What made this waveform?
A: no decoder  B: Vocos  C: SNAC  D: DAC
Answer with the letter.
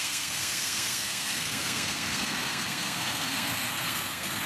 C